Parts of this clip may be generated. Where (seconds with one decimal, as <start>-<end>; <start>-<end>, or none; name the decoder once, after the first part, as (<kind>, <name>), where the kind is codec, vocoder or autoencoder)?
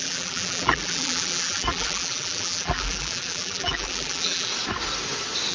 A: 0.0-4.5 (vocoder, BigVGAN v2)